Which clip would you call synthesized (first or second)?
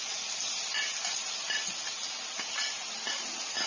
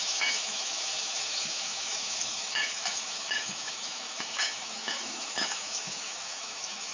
second